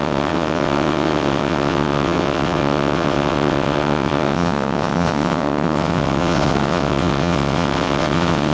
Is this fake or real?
fake